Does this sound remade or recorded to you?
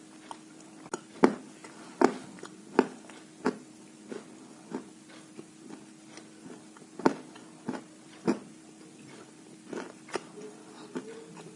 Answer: recorded